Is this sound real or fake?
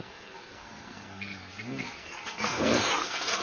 fake